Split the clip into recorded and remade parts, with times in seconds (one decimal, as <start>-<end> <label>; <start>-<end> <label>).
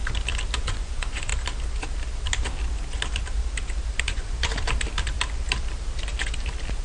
0.0-0.6 recorded; 0.6-1.3 remade; 1.3-4.0 recorded; 4.0-4.5 remade; 4.5-6.8 recorded